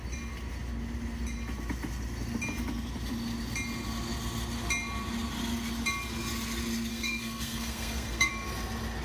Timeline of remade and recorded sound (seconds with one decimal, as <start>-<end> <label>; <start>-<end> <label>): 0.0-6.9 recorded; 6.9-8.3 remade; 8.3-9.0 recorded